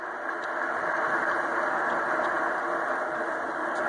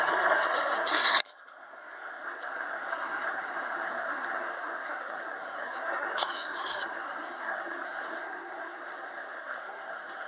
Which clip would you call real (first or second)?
first